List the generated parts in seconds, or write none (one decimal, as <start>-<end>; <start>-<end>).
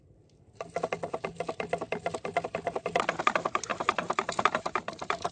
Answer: 3.7-5.3